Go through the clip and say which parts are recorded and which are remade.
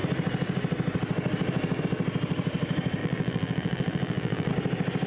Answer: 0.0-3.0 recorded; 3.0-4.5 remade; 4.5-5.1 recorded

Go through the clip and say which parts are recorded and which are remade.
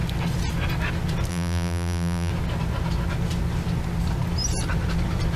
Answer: 0.0-1.3 recorded; 1.3-2.3 remade; 2.3-5.4 recorded